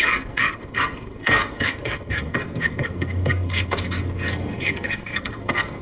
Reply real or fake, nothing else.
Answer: fake